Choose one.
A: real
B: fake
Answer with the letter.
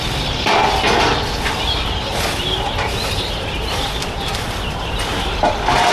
A